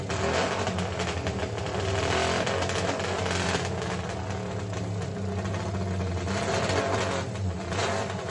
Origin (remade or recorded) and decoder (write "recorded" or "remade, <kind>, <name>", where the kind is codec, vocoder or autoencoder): recorded